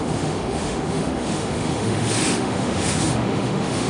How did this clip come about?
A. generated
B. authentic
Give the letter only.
A